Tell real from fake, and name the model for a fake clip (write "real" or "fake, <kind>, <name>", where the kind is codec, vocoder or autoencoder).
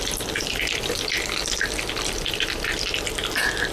real